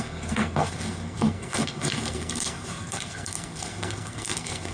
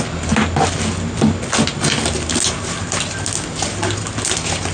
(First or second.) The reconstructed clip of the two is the first